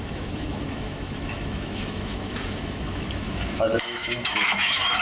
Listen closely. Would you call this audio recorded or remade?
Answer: remade